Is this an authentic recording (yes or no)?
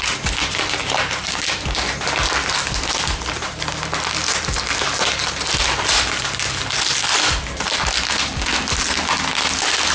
yes